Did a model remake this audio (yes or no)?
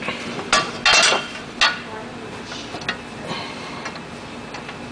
no